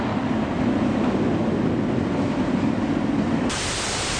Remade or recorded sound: recorded